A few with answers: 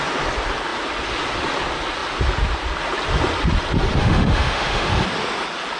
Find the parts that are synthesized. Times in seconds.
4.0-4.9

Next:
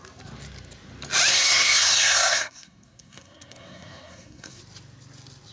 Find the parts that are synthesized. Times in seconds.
1.3-4.6

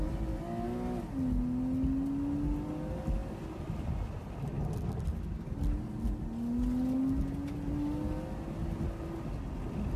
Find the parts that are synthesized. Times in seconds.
none